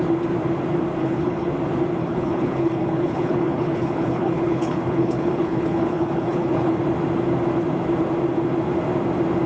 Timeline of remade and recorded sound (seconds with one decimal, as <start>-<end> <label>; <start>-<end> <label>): 0.0-1.0 recorded; 1.0-1.5 remade; 1.5-2.0 recorded; 2.0-6.8 remade; 6.8-9.5 recorded